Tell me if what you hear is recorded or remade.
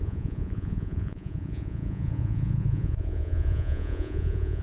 remade